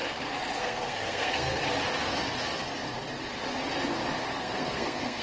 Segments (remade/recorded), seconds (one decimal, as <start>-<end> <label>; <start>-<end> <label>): 0.0-0.6 recorded; 0.6-1.6 remade; 1.6-4.4 recorded; 4.4-5.2 remade